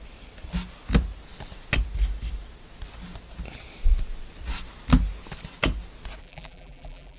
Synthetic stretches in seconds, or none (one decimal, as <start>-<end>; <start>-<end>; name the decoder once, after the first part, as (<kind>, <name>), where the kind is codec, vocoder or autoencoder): 6.2-7.2 (vocoder, BigVGAN v2)

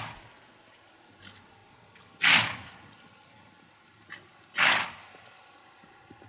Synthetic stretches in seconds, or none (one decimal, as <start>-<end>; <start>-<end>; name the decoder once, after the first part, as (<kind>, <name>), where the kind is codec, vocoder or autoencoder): none